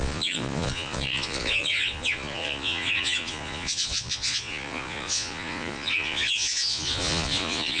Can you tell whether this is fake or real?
fake